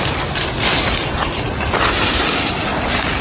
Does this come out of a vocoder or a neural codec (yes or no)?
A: no